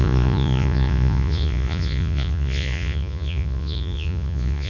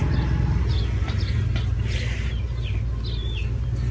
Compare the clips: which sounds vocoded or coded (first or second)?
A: first